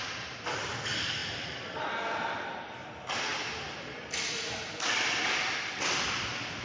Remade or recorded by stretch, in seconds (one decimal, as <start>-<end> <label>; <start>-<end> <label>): 0.0-6.6 recorded